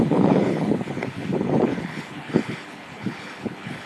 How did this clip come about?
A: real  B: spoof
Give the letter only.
B